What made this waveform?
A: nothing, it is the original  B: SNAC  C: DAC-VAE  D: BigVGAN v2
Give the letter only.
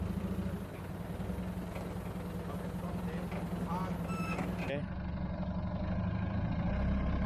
A